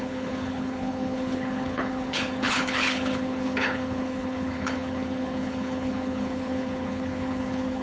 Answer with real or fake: fake